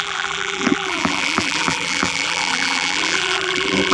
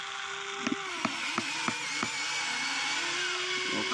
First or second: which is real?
second